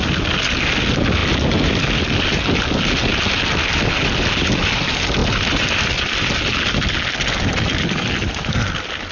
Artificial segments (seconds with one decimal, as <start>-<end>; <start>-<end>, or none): none